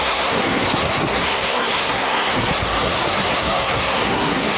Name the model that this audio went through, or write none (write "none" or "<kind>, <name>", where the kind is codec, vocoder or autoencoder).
codec, SNAC